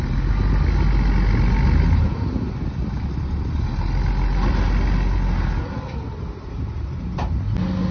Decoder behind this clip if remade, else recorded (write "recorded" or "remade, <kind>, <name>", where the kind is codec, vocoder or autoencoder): recorded